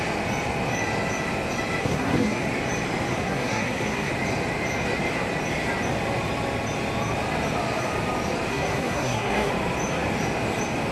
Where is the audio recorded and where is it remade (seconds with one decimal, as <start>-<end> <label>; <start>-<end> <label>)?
0.0-1.8 recorded; 1.8-2.4 remade; 2.4-3.1 recorded; 3.1-4.1 remade; 4.1-8.5 recorded; 8.5-9.5 remade; 9.5-10.9 recorded